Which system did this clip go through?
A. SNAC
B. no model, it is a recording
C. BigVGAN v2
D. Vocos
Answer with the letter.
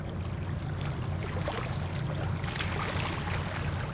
B